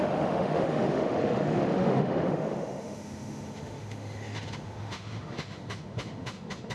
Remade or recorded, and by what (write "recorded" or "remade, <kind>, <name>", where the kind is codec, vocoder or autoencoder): remade, autoencoder, DAC-VAE